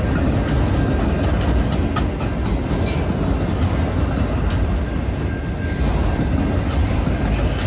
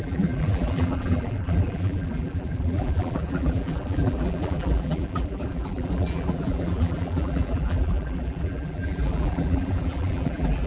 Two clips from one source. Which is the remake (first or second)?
second